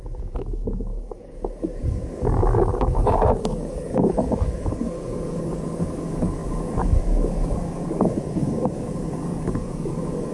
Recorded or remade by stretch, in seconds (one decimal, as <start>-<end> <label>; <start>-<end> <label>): 0.0-10.3 remade